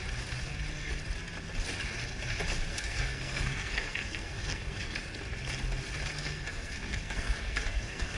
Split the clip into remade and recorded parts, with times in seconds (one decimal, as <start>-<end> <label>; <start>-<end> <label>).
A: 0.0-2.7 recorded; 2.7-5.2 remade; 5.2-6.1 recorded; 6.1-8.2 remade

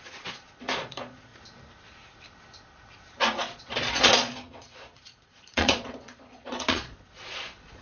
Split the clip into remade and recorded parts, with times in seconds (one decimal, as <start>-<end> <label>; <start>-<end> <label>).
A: 0.0-1.3 remade; 1.3-3.4 recorded; 3.4-7.8 remade

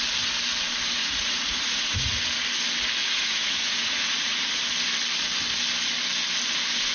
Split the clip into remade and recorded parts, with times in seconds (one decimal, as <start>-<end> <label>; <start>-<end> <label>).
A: 0.0-1.0 recorded; 1.0-2.2 remade; 2.2-3.0 recorded; 3.0-4.6 remade; 4.6-6.9 recorded